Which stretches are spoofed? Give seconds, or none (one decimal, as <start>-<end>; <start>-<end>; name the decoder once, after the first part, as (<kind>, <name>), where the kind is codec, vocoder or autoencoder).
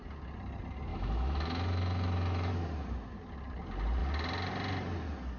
0.9-2.5 (autoencoder, DAC-VAE)